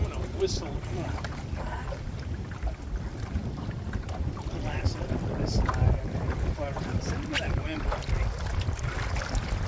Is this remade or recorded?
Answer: remade